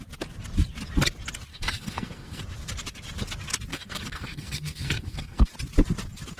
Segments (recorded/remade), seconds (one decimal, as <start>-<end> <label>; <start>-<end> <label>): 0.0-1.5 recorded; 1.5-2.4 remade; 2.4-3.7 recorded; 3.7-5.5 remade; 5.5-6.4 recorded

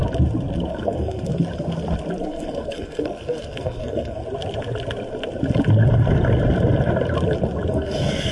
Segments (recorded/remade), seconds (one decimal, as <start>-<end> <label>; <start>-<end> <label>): 0.0-0.7 recorded; 0.7-1.3 remade; 1.3-2.2 recorded; 2.2-4.2 remade; 4.2-7.7 recorded; 7.7-8.3 remade

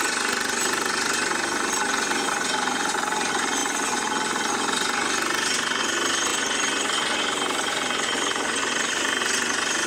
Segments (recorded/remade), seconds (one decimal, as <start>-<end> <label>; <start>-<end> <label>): 0.0-9.9 recorded